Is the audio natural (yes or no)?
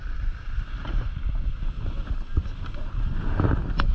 yes